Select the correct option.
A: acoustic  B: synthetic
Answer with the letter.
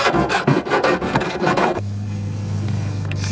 B